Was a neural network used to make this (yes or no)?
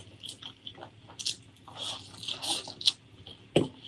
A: no